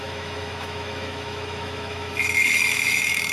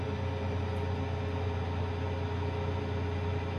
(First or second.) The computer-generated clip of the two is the first